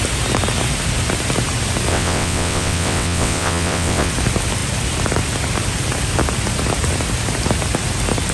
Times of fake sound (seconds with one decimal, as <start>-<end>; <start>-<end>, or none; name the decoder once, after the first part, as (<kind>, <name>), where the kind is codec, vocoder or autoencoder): 1.9-4.1 (vocoder, WaveNeXt)